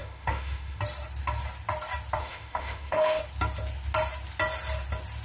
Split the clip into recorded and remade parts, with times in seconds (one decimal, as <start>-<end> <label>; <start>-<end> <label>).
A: 0.0-0.8 remade; 0.8-2.2 recorded; 2.2-3.2 remade; 3.2-5.2 recorded